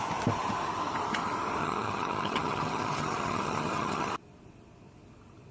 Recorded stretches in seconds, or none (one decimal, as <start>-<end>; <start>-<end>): 0.0-1.6; 4.1-5.5